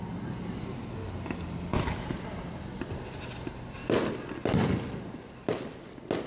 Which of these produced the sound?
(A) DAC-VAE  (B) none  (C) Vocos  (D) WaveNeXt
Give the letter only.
B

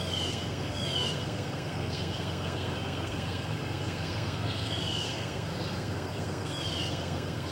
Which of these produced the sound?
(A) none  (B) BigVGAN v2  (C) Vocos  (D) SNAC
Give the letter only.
D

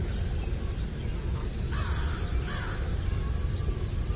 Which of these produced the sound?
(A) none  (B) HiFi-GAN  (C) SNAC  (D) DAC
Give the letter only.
A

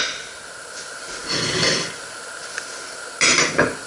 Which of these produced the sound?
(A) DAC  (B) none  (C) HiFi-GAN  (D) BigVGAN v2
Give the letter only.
B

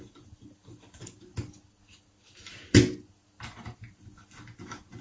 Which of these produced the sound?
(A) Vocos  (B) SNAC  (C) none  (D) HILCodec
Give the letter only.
C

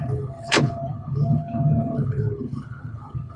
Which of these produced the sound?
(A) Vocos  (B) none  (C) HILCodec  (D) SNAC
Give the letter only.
C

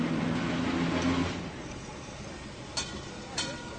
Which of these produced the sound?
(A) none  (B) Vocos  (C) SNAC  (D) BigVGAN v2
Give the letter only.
A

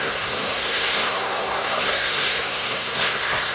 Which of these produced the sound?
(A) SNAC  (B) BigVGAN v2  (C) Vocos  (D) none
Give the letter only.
A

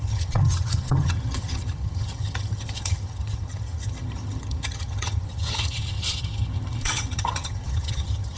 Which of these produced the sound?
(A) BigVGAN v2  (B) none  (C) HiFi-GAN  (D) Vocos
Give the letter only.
C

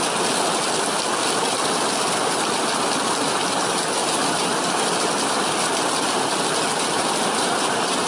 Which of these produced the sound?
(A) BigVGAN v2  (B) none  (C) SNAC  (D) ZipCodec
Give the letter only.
B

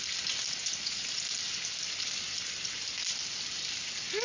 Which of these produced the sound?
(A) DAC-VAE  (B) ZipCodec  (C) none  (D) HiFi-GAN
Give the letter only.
C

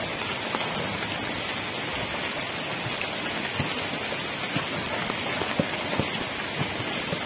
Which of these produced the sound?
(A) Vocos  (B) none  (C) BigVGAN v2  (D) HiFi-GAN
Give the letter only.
B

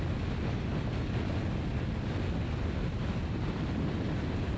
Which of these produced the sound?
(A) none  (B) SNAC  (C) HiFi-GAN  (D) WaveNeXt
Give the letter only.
A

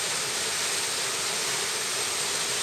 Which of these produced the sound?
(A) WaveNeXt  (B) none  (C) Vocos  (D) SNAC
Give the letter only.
B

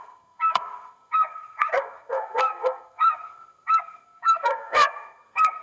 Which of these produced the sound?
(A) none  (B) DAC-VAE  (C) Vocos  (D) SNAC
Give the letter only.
D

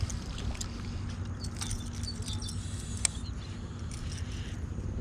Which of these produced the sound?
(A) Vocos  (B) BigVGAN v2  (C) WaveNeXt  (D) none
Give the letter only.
D